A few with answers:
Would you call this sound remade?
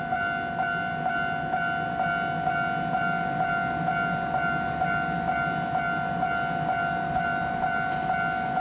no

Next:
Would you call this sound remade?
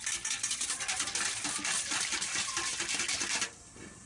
yes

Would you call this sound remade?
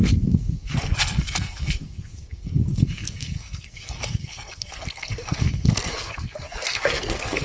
yes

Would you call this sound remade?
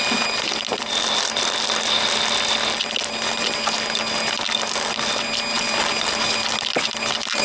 no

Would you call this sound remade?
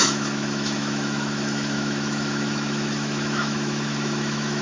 yes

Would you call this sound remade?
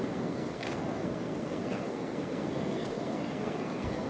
yes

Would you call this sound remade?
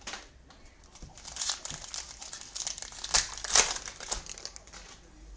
no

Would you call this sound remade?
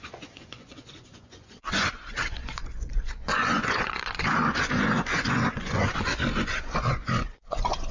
yes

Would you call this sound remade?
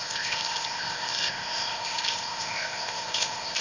yes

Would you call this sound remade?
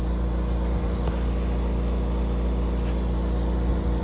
no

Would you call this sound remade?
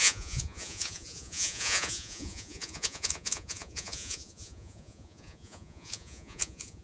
yes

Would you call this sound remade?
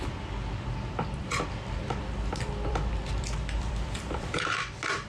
yes